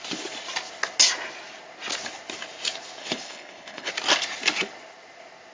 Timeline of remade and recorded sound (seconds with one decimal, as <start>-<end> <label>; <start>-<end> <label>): 0.0-3.0 recorded; 3.0-3.9 remade; 3.9-5.5 recorded